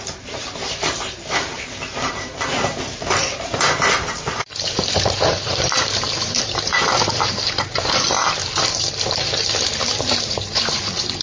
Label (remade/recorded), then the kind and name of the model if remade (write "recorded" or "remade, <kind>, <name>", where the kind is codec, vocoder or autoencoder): remade, vocoder, BigVGAN v2